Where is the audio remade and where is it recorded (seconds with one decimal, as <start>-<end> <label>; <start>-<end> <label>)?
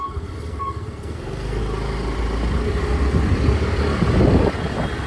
0.0-1.6 remade; 1.6-5.1 recorded